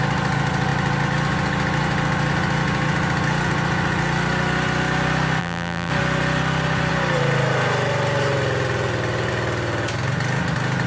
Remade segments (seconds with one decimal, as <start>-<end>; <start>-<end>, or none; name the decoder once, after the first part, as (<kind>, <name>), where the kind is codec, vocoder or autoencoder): 5.4-5.9 (vocoder, BigVGAN v2)